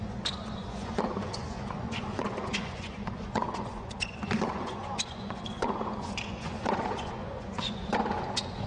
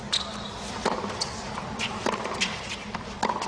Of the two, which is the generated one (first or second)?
first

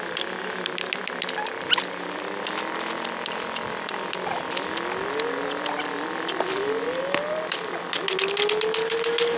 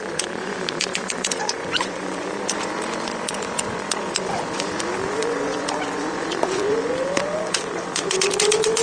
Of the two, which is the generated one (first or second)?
second